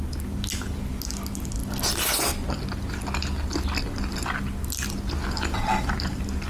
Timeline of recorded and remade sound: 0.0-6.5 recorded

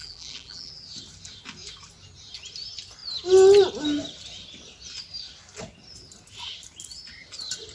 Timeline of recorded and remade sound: 0.0-0.7 remade; 0.7-7.7 recorded

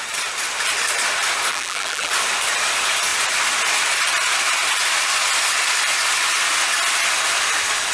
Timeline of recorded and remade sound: 0.0-1.5 recorded; 1.5-2.1 remade; 2.1-7.9 recorded

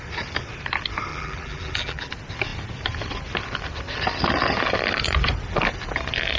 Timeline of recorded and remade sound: 0.0-1.1 recorded; 1.1-2.1 remade; 2.1-6.4 recorded

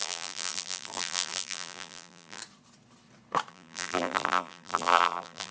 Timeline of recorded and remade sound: 0.0-2.4 remade; 2.4-3.5 recorded; 3.5-5.5 remade

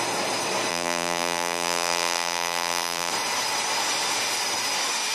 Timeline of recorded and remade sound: 0.0-0.7 recorded; 0.7-3.1 remade; 3.1-5.1 recorded

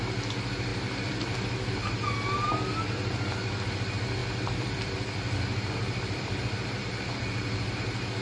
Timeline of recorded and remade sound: 0.0-0.7 recorded; 0.7-1.7 remade; 1.7-4.2 recorded; 4.2-7.7 remade; 7.7-8.2 recorded

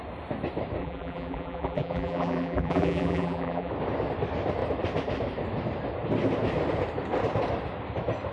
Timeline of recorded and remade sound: 0.0-0.8 recorded; 0.8-3.7 remade; 3.7-8.3 recorded